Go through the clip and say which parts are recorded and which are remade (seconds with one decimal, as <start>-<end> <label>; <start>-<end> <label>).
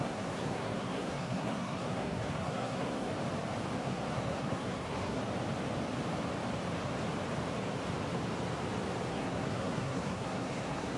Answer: 0.0-3.1 remade; 3.1-3.8 recorded; 3.8-5.2 remade; 5.2-9.1 recorded; 9.1-11.0 remade